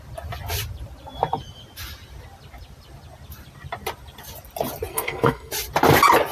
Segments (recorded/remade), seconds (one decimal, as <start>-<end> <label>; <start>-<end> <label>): 0.0-4.9 recorded; 4.9-5.5 remade; 5.5-6.3 recorded

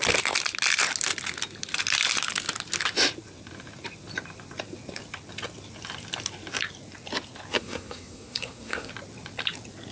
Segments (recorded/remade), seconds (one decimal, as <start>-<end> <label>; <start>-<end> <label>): 0.0-7.5 recorded; 7.5-8.9 remade; 8.9-9.9 recorded